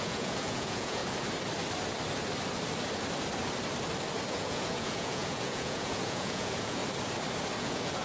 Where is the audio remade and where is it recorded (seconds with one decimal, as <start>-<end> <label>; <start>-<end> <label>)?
0.0-1.0 remade; 1.0-4.3 recorded; 4.3-6.8 remade; 6.8-7.6 recorded; 7.6-8.0 remade